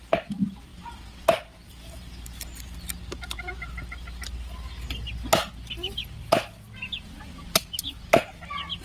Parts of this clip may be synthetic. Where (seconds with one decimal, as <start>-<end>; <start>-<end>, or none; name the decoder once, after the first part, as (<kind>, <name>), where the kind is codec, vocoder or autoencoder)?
none